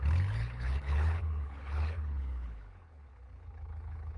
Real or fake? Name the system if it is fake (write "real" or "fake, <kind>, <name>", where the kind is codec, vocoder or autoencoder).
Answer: fake, codec, HILCodec